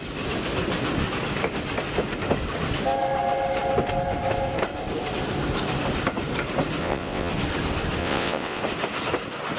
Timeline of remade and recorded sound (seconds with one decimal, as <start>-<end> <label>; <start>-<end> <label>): 0.0-6.8 recorded; 6.8-7.3 remade; 7.3-8.0 recorded; 8.0-8.6 remade; 8.6-9.6 recorded